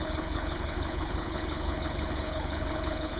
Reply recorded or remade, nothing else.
remade